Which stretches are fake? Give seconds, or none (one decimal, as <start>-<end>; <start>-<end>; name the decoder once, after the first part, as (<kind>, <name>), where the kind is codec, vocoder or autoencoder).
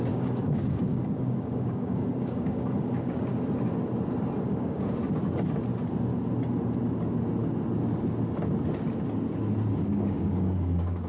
0.0-3.3 (codec, DAC); 4.4-5.0; 9.7-11.1